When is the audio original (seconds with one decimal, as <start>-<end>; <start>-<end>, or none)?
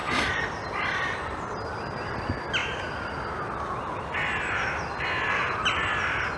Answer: 1.5-6.4